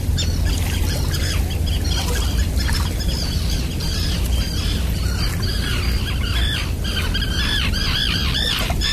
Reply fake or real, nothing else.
real